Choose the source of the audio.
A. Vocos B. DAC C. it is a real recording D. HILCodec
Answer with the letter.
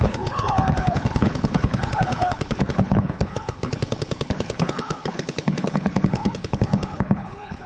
D